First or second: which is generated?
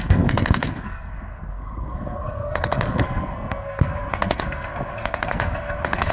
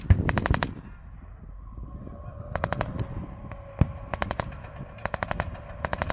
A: first